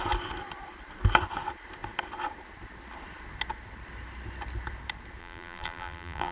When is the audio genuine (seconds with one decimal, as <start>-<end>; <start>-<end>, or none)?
0.0-5.2